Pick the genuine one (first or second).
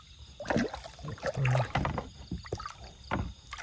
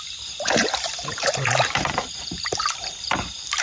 first